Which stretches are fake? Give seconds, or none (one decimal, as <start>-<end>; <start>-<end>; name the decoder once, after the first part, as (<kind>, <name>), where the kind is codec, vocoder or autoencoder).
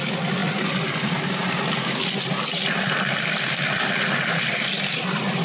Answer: none